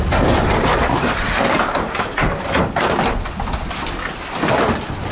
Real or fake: real